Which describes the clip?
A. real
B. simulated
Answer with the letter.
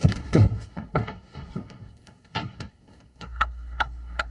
B